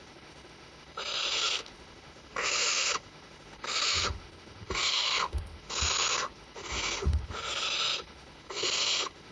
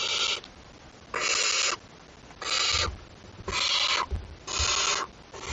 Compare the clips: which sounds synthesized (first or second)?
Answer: first